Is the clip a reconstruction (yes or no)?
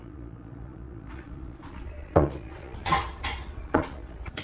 yes